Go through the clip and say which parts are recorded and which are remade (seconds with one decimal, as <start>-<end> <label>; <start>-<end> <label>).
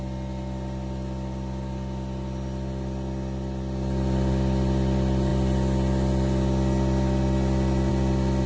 0.0-8.5 recorded